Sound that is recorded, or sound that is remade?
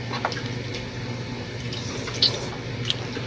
recorded